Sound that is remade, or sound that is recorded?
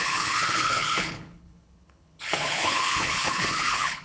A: remade